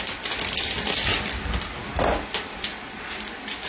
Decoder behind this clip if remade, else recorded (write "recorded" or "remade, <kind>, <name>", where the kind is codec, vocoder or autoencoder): recorded